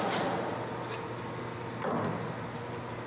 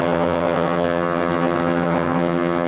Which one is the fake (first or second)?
second